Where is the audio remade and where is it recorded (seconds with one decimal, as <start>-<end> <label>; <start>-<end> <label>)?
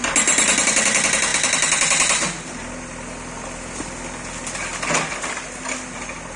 0.0-6.4 recorded